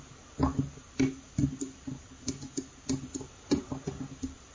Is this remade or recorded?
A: recorded